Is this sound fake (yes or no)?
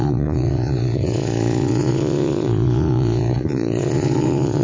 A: yes